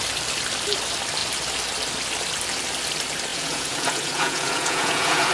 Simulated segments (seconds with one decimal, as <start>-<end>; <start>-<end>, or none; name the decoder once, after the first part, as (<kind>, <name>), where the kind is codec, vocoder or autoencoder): 3.3-5.3 (vocoder, Vocos)